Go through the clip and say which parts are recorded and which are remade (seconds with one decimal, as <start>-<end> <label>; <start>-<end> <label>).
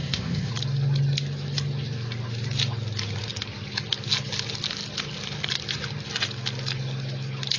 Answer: 0.0-0.5 remade; 0.5-7.6 recorded